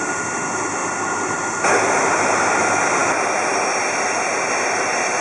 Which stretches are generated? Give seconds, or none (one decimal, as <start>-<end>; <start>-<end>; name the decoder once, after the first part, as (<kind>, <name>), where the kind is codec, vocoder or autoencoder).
none